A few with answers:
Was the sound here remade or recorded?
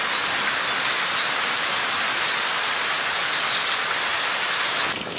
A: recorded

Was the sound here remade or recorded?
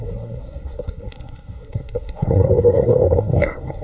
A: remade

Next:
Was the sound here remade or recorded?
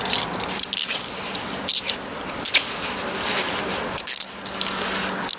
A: recorded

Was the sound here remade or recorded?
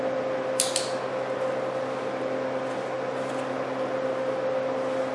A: recorded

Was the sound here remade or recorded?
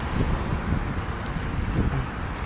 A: recorded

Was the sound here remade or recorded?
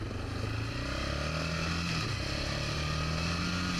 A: recorded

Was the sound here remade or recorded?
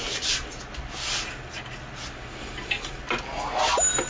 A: recorded